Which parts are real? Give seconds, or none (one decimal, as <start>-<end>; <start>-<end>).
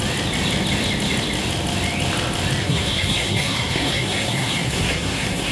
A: 0.0-2.6